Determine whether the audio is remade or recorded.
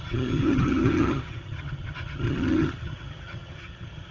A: remade